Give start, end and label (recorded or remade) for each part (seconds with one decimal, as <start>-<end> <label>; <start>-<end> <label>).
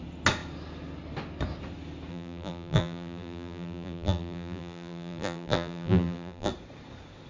0.0-2.1 recorded; 2.1-6.5 remade; 6.5-7.3 recorded